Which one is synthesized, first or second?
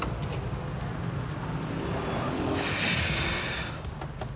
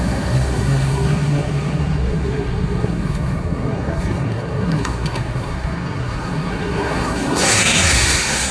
second